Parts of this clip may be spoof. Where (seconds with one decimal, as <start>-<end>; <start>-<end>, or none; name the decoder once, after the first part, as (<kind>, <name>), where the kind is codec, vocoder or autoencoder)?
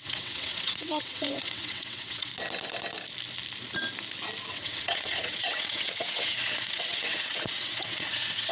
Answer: 0.0-2.3 (vocoder, WaveNeXt); 4.5-8.5